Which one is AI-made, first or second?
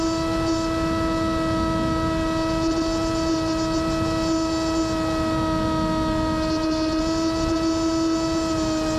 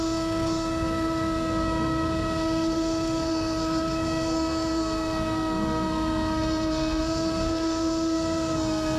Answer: second